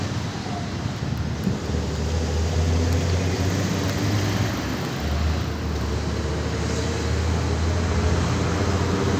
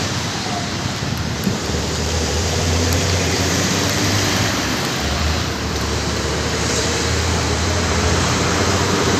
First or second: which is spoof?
second